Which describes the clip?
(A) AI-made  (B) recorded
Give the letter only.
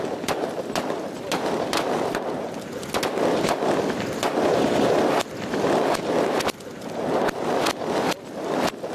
B